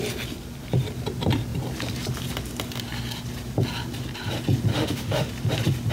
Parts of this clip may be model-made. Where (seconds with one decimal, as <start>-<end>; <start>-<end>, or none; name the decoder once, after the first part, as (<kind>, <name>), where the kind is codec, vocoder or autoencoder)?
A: 4.7-5.3 (autoencoder, DAC-VAE)